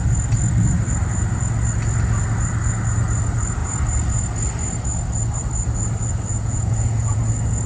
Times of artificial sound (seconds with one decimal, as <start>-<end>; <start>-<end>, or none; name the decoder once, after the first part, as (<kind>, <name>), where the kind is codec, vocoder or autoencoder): 6.3-7.2 (vocoder, Vocos)